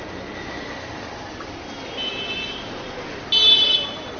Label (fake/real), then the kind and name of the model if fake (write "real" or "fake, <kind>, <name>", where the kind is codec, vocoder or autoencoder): real